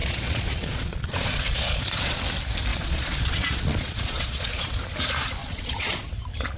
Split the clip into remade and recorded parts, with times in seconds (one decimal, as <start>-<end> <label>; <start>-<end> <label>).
0.0-2.2 remade; 2.2-2.7 recorded; 2.7-4.8 remade; 4.8-5.4 recorded; 5.4-6.1 remade; 6.1-6.6 recorded